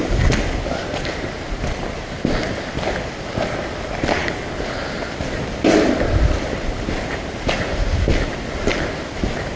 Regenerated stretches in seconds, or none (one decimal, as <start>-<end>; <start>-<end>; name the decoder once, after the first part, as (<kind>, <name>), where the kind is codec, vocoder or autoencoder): 4.2-4.8 (codec, HILCodec)